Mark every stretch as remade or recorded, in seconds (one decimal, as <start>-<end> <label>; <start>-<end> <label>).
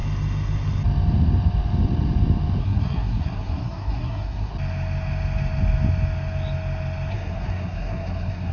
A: 0.0-2.6 recorded; 2.6-4.5 remade; 4.5-7.1 recorded; 7.1-8.5 remade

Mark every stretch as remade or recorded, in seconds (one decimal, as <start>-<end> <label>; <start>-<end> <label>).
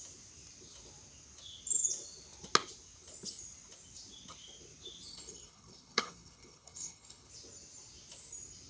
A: 0.0-5.1 recorded; 5.1-7.3 remade; 7.3-8.7 recorded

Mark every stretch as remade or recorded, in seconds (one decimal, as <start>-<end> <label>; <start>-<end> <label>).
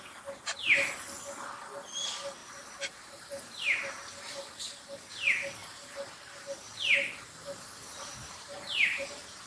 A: 0.0-2.4 recorded; 2.4-4.1 remade; 4.1-5.6 recorded; 5.6-6.7 remade; 6.7-7.9 recorded; 7.9-9.1 remade; 9.1-9.5 recorded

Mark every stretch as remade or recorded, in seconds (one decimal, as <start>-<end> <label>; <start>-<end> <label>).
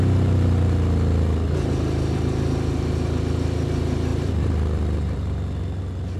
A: 0.0-4.1 recorded; 4.1-5.8 remade; 5.8-6.2 recorded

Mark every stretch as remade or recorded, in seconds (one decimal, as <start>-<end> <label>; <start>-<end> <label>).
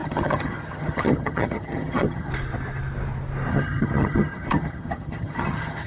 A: 0.0-2.3 remade; 2.3-3.5 recorded; 3.5-5.9 remade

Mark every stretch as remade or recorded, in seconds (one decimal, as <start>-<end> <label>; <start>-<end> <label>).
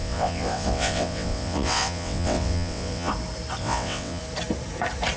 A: 0.0-3.1 remade; 3.1-3.6 recorded; 3.6-4.2 remade; 4.2-5.2 recorded